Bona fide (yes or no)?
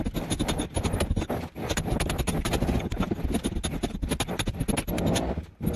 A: yes